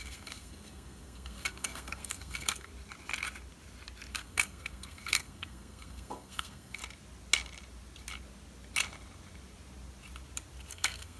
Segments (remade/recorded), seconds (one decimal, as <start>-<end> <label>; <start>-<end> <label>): 0.0-2.7 remade; 2.7-4.1 recorded; 4.1-6.8 remade; 6.8-10.7 recorded; 10.7-11.2 remade

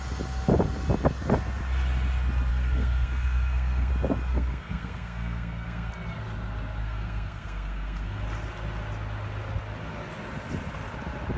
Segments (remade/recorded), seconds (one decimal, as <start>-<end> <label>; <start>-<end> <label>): 0.0-2.5 recorded; 2.5-3.9 remade; 3.9-4.3 recorded; 4.3-5.9 remade; 5.9-6.8 recorded; 6.8-8.2 remade; 8.2-11.4 recorded

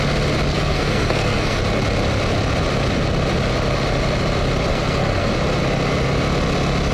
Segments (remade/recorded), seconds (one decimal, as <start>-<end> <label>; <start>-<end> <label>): 0.0-0.5 recorded; 0.5-1.6 remade; 1.6-4.7 recorded; 4.7-5.3 remade; 5.3-6.9 recorded